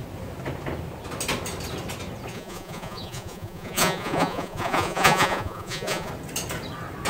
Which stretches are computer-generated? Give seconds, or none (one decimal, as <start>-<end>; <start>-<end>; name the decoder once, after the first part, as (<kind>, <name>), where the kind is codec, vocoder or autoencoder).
2.3-6.1 (vocoder, Vocos)

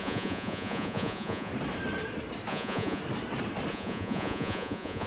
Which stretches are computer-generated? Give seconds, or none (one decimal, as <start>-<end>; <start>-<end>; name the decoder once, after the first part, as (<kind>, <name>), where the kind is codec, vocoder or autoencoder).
0.0-1.5 (vocoder, Vocos); 2.5-3.0; 3.7-5.1

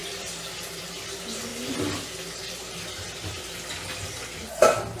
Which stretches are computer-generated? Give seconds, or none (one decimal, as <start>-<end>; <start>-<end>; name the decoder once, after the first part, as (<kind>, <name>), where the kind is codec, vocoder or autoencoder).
0.0-0.8 (vocoder, BigVGAN v2)

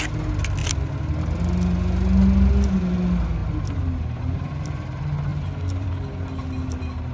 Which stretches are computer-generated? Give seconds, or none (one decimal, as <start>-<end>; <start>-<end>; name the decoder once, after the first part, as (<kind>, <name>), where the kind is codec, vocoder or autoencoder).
5.3-5.9 (vocoder, BigVGAN v2)

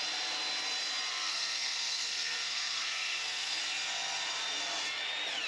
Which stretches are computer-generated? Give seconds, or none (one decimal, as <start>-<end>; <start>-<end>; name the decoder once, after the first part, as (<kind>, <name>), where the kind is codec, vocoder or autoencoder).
1.1-3.6 (codec, SNAC)

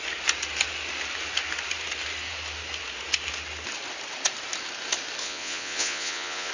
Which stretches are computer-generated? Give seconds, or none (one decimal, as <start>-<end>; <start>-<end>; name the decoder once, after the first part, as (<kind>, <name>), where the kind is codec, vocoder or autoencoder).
5.2-6.5 (vocoder, Vocos)